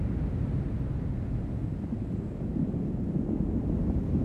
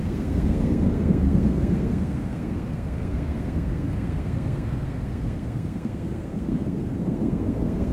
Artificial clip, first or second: second